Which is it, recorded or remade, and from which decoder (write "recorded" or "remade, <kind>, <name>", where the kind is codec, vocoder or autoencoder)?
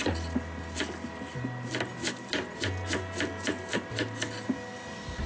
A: recorded